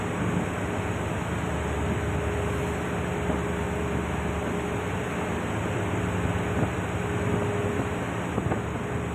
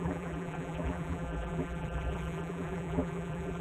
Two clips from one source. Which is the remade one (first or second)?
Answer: second